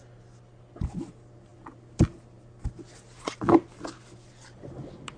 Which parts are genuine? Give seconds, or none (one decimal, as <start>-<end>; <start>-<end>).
0.0-5.2